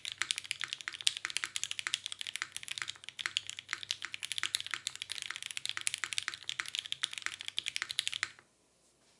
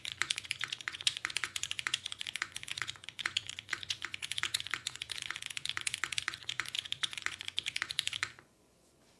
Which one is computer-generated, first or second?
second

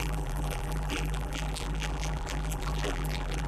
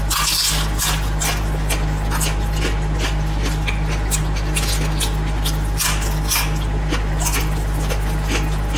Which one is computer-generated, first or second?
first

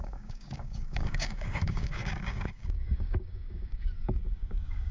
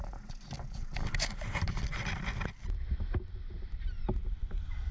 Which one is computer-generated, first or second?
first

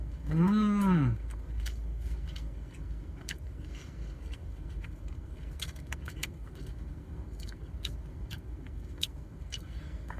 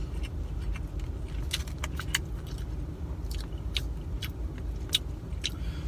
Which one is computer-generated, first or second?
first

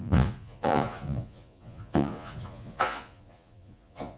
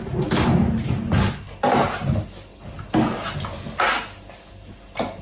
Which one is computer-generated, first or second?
first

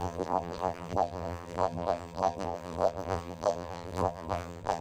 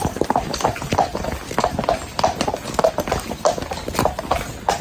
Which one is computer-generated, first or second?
first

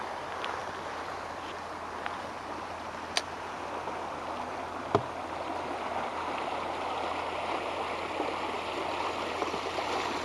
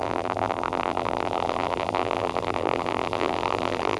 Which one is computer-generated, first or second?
second